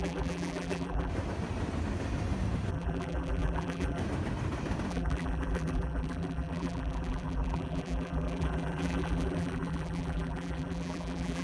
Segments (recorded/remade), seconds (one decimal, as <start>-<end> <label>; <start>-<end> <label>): 0.0-1.1 remade; 1.1-2.7 recorded; 2.7-4.0 remade; 4.0-4.9 recorded; 4.9-11.4 remade